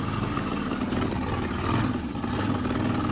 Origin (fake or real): real